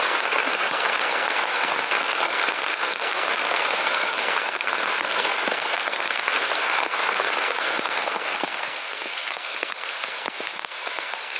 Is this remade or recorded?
remade